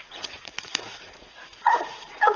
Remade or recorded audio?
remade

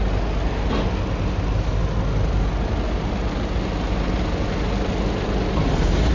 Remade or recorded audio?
recorded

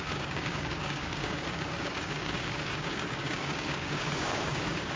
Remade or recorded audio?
remade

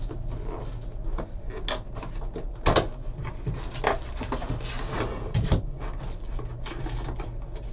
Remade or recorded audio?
recorded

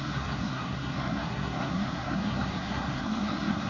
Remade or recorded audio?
remade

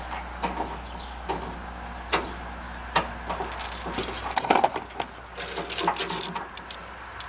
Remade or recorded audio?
recorded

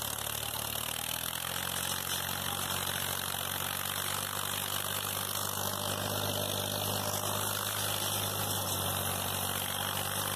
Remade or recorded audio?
recorded